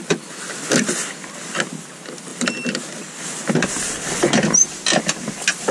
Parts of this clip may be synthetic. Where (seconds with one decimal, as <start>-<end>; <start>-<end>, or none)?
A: none